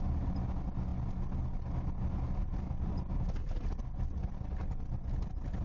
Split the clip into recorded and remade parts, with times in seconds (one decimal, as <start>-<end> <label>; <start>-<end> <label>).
0.0-5.6 recorded